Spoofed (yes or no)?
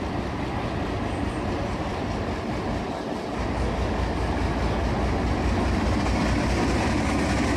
no